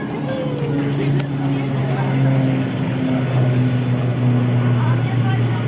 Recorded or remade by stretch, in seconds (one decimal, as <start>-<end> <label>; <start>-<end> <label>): 0.0-5.7 recorded